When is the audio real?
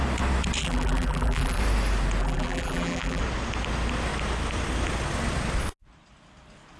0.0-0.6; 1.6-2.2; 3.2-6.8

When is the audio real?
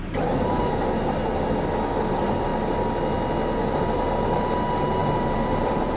1.3-2.1; 2.5-3.7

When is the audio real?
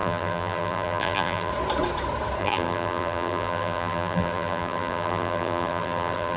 1.5-2.4